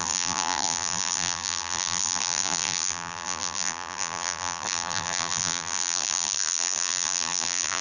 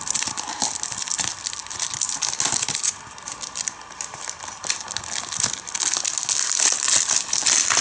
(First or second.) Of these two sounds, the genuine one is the second